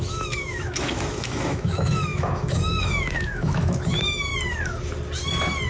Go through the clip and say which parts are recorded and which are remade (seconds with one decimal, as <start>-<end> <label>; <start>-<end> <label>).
0.0-4.3 remade; 4.3-5.7 recorded